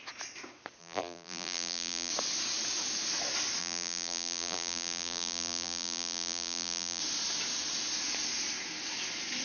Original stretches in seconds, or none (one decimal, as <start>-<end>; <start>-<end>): 0.0-0.8; 2.1-3.6; 7.0-9.4